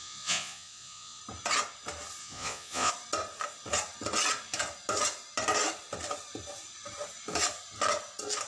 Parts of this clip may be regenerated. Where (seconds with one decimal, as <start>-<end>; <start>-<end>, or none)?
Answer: 0.0-1.2; 2.2-2.9